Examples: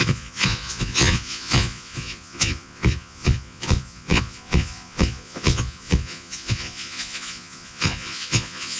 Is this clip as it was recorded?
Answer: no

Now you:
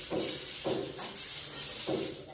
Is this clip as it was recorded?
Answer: yes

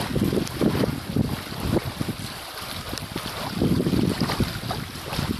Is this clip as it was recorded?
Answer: yes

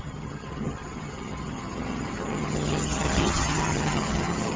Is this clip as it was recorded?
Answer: no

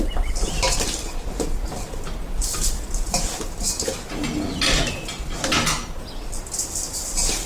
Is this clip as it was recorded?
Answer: yes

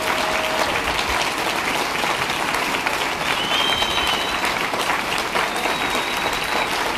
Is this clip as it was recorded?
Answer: yes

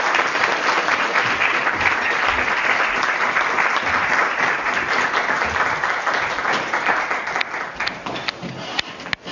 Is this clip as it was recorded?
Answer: yes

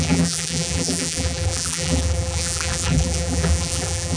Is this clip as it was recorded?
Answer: no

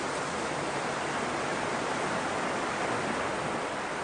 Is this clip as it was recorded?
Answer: yes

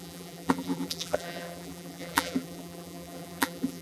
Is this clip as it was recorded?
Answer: no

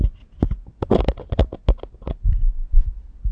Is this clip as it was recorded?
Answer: yes